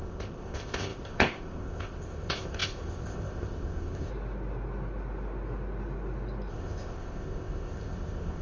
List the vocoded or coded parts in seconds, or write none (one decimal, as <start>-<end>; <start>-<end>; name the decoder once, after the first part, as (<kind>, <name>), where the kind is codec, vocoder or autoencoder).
0.0-4.1 (codec, ZipCodec); 6.5-8.4